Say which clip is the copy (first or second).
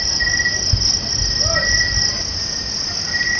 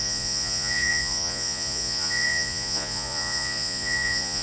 second